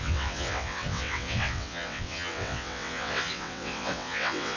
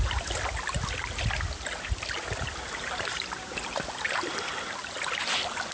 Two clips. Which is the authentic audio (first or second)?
second